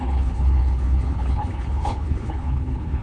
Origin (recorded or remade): remade